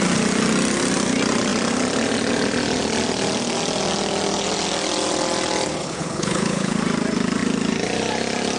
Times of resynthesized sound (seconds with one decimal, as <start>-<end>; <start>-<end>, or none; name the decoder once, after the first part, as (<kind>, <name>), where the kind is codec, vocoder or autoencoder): 5.8-6.8 (codec, HILCodec)